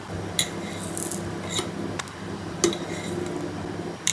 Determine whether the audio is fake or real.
real